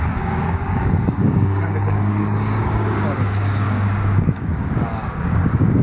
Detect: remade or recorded remade